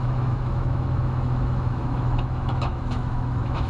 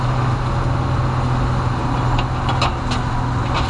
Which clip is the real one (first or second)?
second